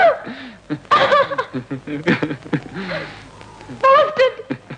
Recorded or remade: recorded